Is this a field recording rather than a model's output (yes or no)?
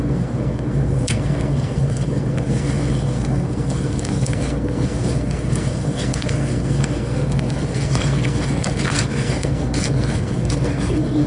no